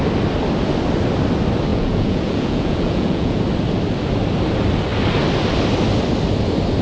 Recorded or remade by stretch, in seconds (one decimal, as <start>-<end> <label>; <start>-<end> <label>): 0.0-1.7 recorded; 1.7-3.4 remade; 3.4-6.8 recorded